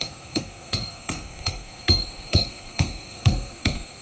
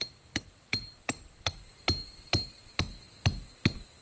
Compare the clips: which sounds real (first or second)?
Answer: second